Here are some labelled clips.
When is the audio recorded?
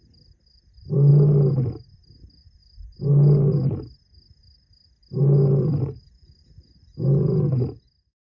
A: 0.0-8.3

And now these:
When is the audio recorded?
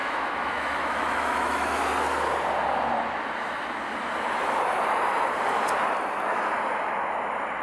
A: 1.9-7.6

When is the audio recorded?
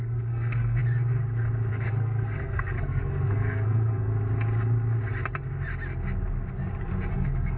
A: 0.8-1.7; 4.1-7.1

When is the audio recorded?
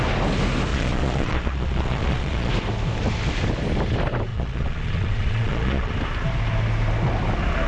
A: 0.0-0.7; 2.5-4.3; 5.9-7.7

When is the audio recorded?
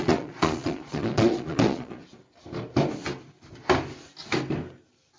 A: 2.0-5.2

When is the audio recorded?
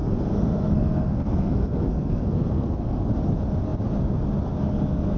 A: 3.1-5.2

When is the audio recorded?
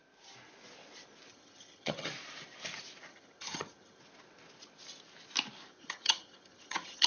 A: 0.0-1.3; 2.1-3.1; 4.0-5.7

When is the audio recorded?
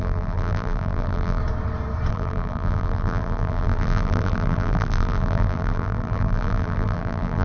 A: 1.4-2.1